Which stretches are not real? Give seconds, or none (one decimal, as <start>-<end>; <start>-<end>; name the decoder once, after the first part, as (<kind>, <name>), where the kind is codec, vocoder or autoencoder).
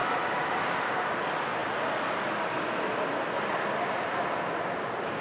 none